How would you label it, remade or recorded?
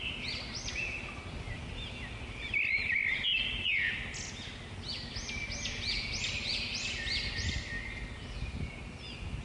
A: recorded